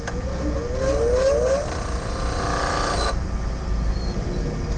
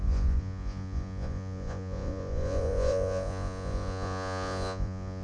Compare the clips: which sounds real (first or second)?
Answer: first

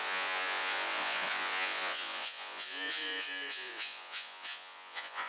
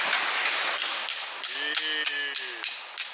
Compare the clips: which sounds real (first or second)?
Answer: second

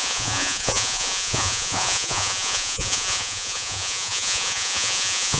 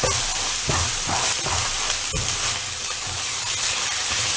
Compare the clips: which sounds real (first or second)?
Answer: second